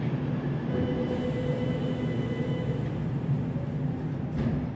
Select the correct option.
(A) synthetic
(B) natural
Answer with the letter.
B